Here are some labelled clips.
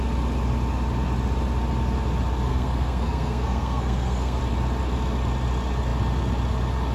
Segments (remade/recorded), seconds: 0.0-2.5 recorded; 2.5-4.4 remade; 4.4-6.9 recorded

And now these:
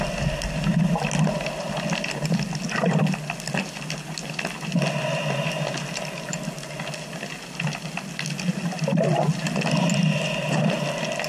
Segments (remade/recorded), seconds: 0.0-11.3 recorded

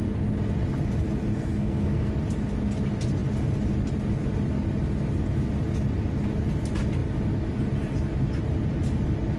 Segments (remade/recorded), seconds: 0.0-1.3 recorded; 1.3-2.1 remade; 2.1-9.4 recorded

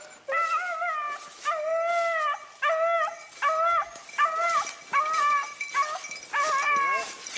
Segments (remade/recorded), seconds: 0.0-7.4 recorded

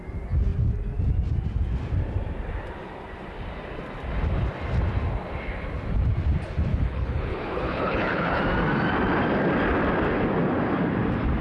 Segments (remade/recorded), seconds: 0.0-6.7 recorded; 6.7-8.4 remade; 8.4-11.4 recorded

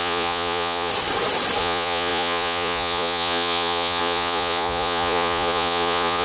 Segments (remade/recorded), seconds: 0.0-0.9 remade; 0.9-1.6 recorded; 1.6-6.2 remade

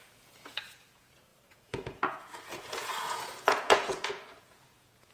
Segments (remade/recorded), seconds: 0.0-5.1 remade